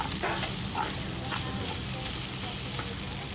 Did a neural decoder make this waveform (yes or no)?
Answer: no